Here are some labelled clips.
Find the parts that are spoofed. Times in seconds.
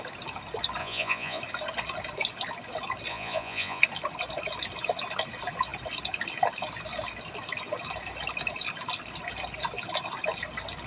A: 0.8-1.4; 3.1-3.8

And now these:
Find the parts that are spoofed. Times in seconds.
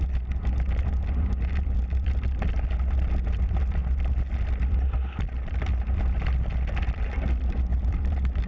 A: 7.7-8.5